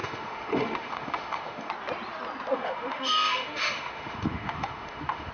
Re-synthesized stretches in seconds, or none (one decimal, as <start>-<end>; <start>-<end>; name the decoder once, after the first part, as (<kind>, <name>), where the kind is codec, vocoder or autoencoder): 0.0-1.7 (autoencoder, DAC-VAE); 2.5-5.3